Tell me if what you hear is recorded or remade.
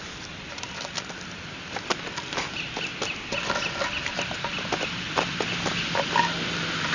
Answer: recorded